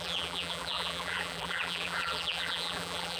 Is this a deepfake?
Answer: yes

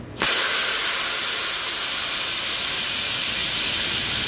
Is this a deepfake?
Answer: no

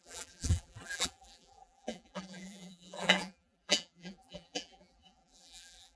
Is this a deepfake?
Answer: yes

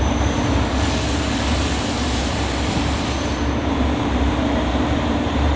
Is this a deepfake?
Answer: yes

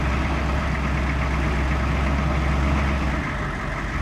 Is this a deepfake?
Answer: no